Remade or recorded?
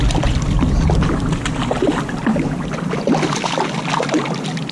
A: recorded